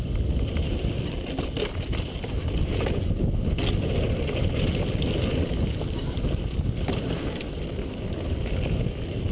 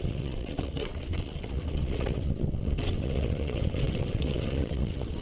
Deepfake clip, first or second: second